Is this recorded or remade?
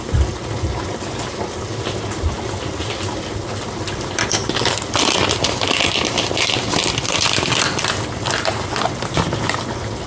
recorded